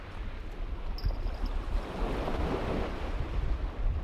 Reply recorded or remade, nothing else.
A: recorded